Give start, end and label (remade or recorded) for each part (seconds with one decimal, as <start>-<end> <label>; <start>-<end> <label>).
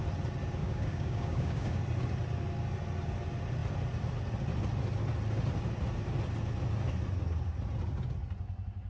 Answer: 0.0-0.6 recorded; 0.6-1.8 remade; 1.8-8.9 recorded